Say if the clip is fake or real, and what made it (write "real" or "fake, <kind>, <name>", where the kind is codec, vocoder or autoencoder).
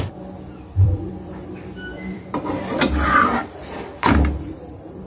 fake, vocoder, BigVGAN v2